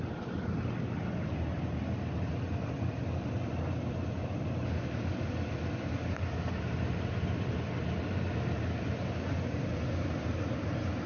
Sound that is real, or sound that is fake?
real